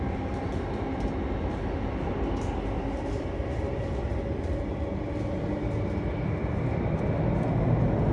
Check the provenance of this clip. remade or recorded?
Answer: recorded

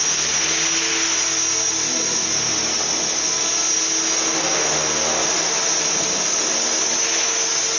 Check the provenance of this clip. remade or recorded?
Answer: recorded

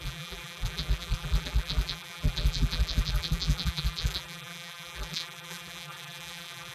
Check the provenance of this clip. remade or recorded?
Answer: remade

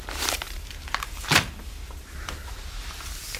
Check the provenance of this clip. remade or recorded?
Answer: remade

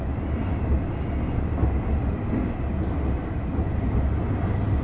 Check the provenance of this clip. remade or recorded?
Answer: recorded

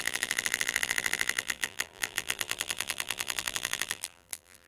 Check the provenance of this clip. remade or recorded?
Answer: remade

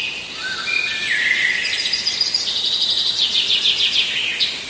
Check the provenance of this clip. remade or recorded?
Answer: recorded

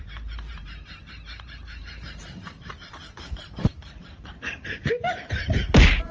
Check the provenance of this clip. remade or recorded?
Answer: remade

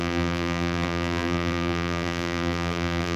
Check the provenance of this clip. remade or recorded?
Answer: remade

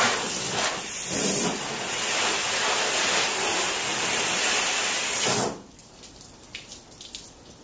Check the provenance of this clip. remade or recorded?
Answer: recorded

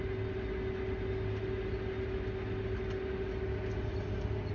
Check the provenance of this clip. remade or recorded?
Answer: recorded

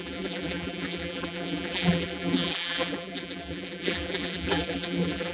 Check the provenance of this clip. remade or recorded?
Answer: remade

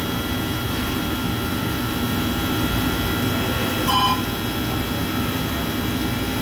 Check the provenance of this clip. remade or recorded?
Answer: recorded